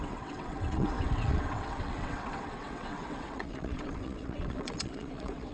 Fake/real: fake